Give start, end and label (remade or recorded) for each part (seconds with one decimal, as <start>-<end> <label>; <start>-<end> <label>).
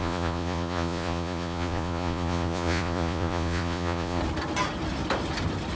0.0-4.2 remade; 4.2-5.8 recorded